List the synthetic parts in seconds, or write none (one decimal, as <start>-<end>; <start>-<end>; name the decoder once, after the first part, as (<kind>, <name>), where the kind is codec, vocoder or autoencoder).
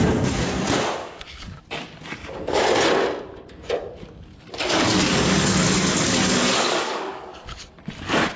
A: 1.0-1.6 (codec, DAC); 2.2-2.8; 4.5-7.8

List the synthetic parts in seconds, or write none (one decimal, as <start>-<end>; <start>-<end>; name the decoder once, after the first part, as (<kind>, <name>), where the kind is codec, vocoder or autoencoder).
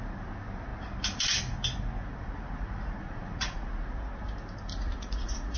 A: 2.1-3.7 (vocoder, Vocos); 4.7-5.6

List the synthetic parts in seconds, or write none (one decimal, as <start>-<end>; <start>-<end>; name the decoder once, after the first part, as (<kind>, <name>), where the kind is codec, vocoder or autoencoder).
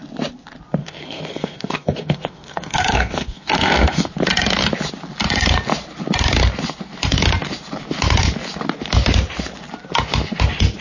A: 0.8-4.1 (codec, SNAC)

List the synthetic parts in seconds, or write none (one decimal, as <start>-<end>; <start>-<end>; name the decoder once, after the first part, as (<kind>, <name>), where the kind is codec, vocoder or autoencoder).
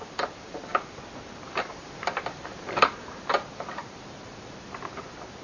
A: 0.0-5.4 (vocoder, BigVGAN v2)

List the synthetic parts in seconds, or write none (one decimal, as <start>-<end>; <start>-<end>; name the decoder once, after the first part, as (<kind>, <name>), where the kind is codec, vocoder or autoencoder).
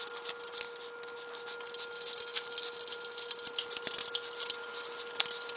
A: none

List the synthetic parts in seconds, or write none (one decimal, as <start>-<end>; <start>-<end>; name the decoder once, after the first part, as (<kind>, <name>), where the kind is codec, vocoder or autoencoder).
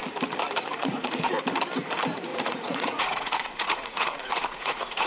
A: 0.7-1.3 (vocoder, Vocos); 2.3-5.1